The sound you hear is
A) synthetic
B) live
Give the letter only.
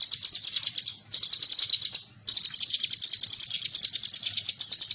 B